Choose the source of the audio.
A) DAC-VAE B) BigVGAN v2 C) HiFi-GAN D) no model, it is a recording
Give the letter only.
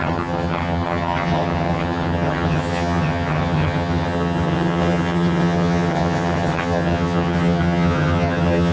C